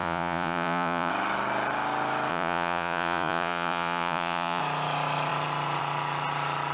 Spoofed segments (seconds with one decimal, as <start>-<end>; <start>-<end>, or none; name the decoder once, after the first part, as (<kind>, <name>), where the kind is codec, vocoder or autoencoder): 0.0-1.1 (vocoder, Vocos); 2.3-4.6